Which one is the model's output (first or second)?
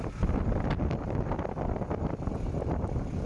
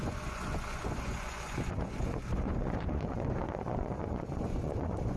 second